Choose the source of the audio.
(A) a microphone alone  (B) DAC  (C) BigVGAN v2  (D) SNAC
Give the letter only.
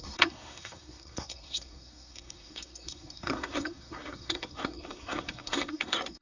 D